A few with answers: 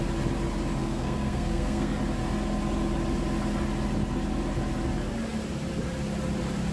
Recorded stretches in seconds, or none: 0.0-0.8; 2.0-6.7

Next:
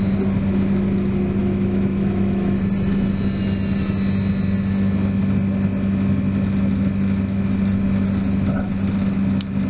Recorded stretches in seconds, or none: 0.0-1.4; 2.6-9.7

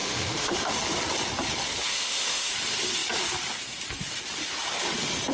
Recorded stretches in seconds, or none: 0.7-1.9; 2.5-5.3